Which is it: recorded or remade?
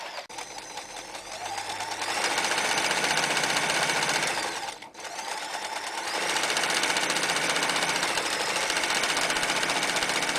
recorded